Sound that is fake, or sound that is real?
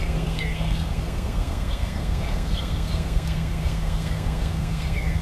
fake